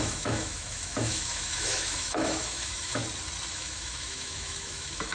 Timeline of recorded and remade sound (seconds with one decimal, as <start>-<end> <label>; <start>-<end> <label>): 0.0-3.0 remade; 3.0-3.5 recorded; 3.5-5.1 remade